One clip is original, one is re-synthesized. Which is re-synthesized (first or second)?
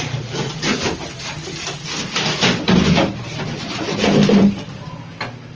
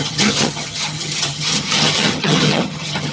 second